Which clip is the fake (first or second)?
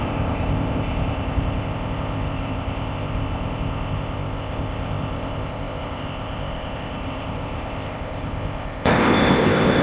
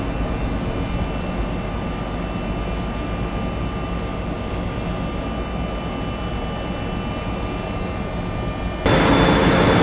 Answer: first